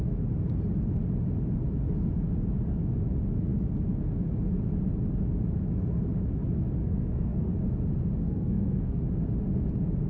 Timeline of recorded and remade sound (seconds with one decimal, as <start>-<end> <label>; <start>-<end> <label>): 0.0-6.8 recorded; 6.8-7.5 remade; 7.5-8.2 recorded; 8.2-9.0 remade; 9.0-10.1 recorded